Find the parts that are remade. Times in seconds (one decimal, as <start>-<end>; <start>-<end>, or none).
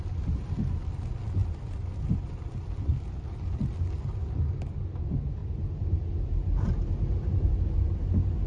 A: 1.4-2.1; 5.4-7.5